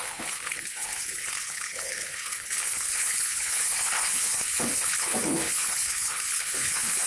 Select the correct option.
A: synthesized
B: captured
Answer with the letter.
A